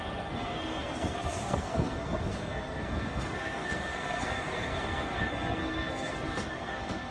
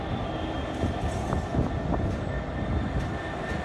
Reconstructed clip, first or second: first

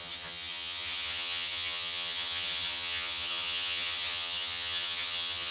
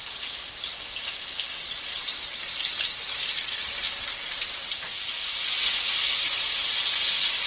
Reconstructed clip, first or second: first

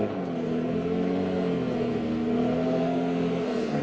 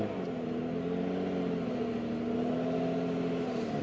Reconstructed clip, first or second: first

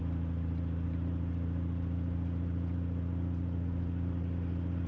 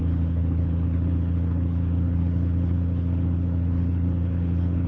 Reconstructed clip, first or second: second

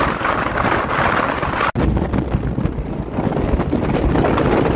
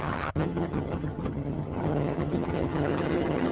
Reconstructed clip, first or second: second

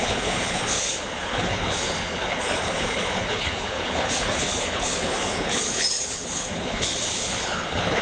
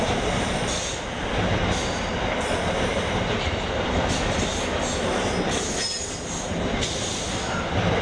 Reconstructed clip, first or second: first